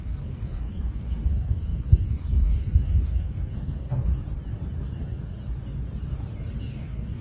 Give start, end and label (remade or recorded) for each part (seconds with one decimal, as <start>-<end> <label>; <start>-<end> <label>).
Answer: 0.0-4.1 remade; 4.1-4.8 recorded; 4.8-5.4 remade; 5.4-6.6 recorded; 6.6-7.2 remade